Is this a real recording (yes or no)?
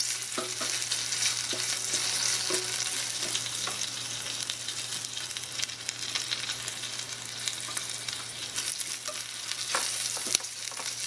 yes